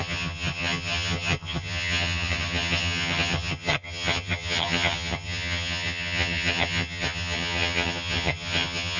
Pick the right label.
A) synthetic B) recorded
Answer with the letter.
A